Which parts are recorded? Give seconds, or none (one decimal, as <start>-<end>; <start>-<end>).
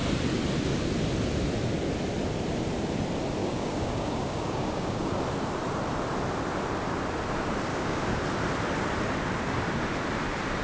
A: 0.0-3.4; 5.2-7.7; 8.2-10.6